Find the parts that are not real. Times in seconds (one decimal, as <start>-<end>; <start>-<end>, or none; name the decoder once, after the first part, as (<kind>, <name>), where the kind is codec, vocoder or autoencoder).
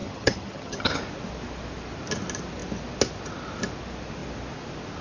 0.0-1.0 (vocoder, HiFi-GAN)